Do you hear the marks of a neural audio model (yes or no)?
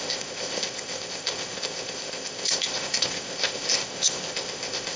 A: yes